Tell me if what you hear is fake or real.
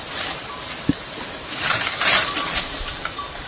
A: real